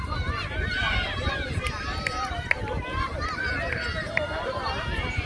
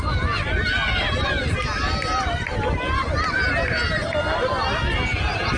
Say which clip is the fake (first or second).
first